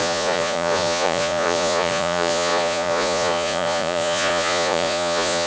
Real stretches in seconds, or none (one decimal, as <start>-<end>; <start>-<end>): none